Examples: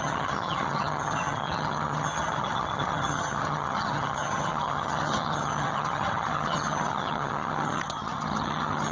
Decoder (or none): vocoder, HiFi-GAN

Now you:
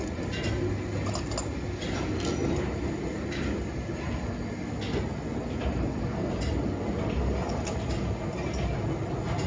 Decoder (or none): none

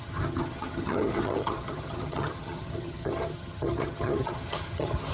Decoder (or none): vocoder, HiFi-GAN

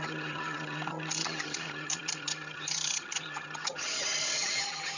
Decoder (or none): vocoder, HiFi-GAN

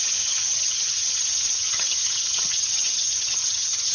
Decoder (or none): vocoder, HiFi-GAN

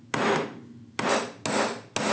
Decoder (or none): none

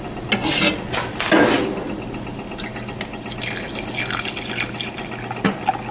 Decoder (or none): none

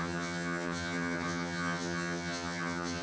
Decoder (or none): vocoder, HiFi-GAN